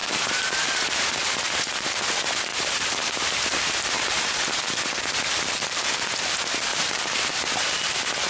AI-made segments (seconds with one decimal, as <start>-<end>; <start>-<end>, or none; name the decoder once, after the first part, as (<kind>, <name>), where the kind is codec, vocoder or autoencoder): 0.0-1.4 (vocoder, BigVGAN v2); 2.5-4.3; 6.7-7.3